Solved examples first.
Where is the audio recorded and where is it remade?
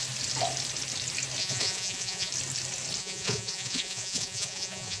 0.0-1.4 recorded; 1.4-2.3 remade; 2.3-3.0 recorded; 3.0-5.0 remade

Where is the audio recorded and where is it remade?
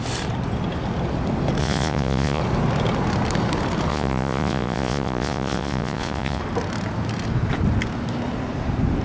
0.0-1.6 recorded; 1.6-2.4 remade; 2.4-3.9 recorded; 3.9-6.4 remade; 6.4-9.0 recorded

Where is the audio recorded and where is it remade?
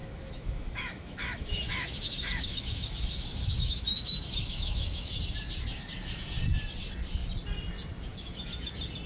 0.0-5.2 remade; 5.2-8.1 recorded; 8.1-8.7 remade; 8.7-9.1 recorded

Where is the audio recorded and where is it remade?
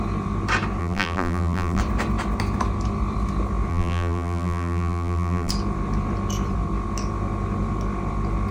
0.0-0.8 recorded; 0.8-1.8 remade; 1.8-3.7 recorded; 3.7-5.5 remade; 5.5-8.5 recorded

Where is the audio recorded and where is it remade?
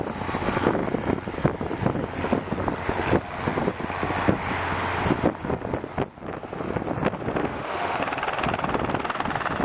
0.0-7.4 recorded; 7.4-8.0 remade; 8.0-9.6 recorded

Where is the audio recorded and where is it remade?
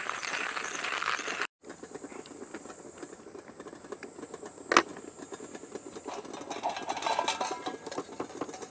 0.0-8.7 recorded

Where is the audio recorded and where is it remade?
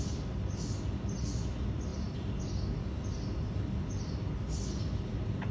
0.0-5.5 recorded